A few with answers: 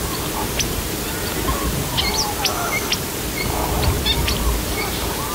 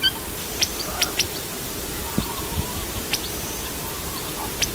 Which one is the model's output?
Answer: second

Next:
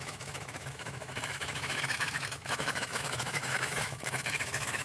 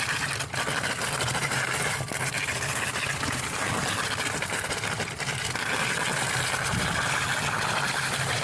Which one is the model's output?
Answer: first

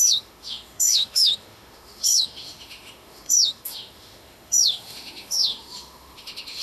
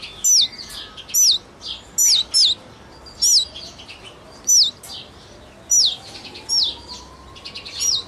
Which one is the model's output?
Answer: first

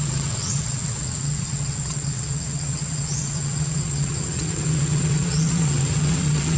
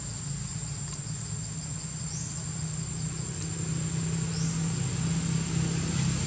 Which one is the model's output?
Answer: first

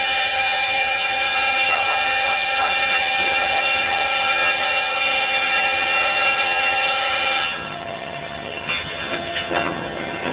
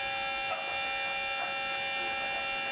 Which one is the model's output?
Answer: first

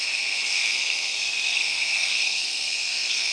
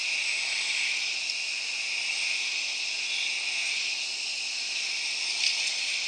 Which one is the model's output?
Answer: first